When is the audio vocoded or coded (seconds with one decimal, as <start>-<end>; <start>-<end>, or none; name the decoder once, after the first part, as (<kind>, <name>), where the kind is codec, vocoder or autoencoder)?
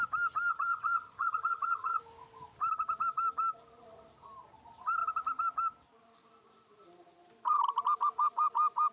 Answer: 0.5-2.0 (vocoder, HiFi-GAN)